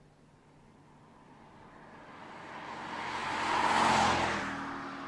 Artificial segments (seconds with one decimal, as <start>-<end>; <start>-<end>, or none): none